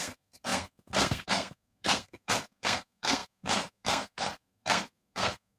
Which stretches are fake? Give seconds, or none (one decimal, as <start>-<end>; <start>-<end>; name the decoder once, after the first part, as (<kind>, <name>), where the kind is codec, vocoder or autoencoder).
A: 0.0-5.6 (codec, SNAC)